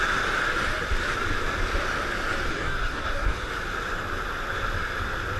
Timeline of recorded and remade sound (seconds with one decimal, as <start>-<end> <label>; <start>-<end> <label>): 0.0-2.5 recorded; 2.5-3.5 remade; 3.5-5.4 recorded

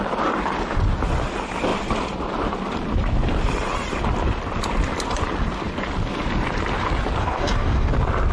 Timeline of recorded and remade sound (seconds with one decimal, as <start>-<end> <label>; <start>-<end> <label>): 0.0-7.2 recorded; 7.2-7.9 remade; 7.9-8.3 recorded

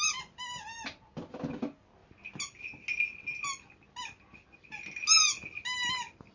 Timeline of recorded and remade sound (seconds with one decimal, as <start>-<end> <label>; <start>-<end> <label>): 0.0-6.3 recorded

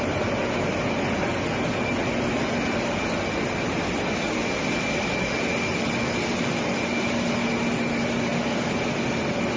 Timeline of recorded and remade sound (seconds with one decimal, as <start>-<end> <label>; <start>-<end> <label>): 0.0-9.6 recorded

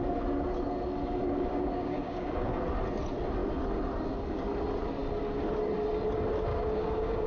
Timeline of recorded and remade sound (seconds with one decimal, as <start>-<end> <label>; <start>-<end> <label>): 0.0-1.5 recorded; 1.5-2.5 remade; 2.5-6.5 recorded; 6.5-7.3 remade